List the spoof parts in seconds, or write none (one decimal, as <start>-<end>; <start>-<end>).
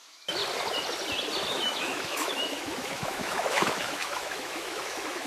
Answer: 0.0-0.4; 1.5-5.3